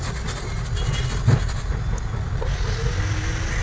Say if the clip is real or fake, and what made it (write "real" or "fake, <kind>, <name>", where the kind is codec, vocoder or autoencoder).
real